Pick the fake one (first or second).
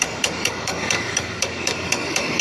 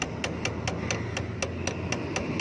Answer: first